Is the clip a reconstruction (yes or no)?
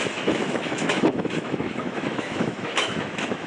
yes